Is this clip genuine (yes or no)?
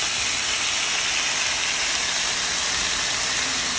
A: yes